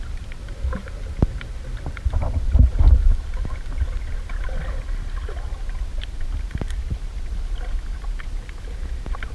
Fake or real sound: real